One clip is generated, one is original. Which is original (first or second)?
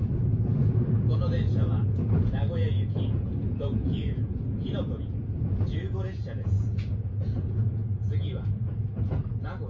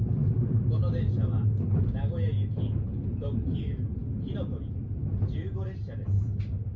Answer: second